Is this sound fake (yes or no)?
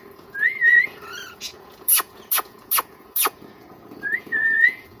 yes